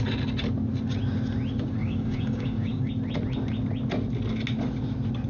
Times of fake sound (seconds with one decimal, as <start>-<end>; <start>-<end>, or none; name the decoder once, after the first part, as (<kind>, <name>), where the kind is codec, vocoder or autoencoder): 1.8-2.9 (codec, DAC)